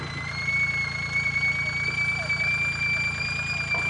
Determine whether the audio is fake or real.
real